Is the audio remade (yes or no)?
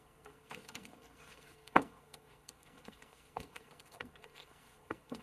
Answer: yes